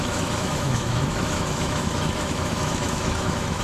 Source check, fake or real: fake